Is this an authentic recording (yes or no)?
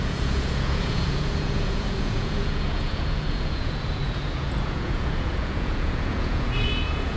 no